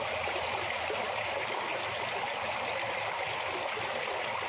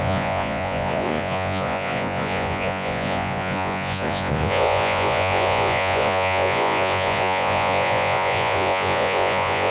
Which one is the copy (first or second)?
second